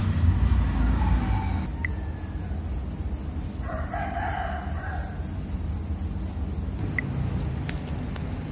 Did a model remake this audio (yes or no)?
no